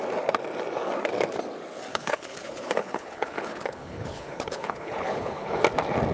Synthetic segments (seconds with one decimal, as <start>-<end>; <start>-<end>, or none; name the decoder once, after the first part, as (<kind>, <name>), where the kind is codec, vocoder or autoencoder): 1.9-5.6 (codec, HILCodec)